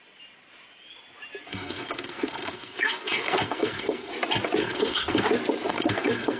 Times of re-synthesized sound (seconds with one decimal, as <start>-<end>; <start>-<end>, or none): 1.5-4.1; 4.6-5.3; 5.7-6.4